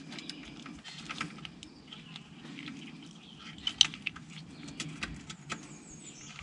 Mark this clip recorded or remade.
recorded